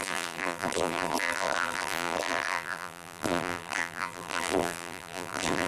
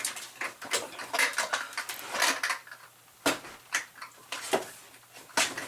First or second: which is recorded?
second